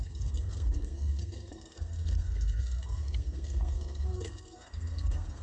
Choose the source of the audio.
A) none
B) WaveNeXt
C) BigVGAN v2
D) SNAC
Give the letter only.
D